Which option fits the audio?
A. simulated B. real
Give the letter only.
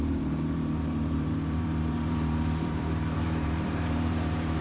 A